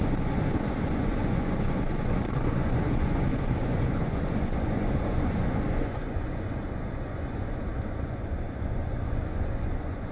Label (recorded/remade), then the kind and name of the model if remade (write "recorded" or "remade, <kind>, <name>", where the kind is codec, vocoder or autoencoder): remade, vocoder, Vocos